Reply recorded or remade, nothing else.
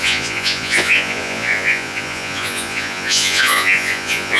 remade